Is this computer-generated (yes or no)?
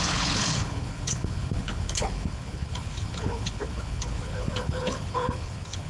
yes